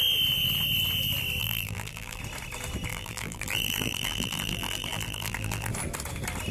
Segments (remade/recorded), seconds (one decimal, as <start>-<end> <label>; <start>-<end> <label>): 0.0-1.4 recorded; 1.4-2.2 remade; 2.2-2.9 recorded; 2.9-5.7 remade; 5.7-6.5 recorded